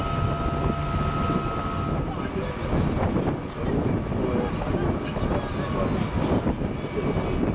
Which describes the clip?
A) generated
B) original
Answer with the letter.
B